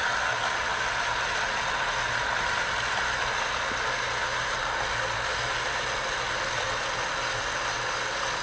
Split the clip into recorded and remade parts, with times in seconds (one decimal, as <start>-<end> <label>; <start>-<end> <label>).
0.0-8.4 recorded